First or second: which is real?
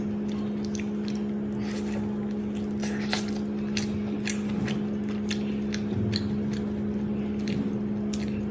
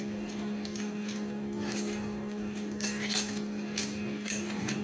first